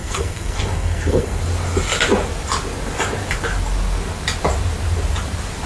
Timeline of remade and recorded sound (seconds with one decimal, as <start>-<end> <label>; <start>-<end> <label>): 0.0-1.4 remade; 1.4-5.7 recorded